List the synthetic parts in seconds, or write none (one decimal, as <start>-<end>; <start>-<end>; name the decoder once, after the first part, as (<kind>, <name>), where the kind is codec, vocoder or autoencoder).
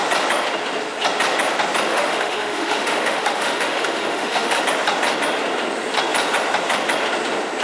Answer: 1.9-4.6 (autoencoder, DAC-VAE)